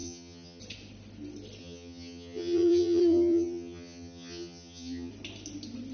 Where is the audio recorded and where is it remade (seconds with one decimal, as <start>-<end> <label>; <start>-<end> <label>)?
0.0-0.6 remade; 0.6-1.6 recorded; 1.6-5.1 remade; 5.1-5.9 recorded